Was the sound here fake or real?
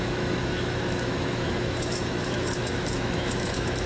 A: fake